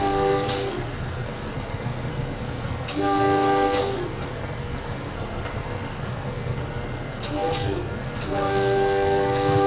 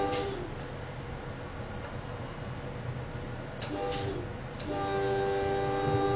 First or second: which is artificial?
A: first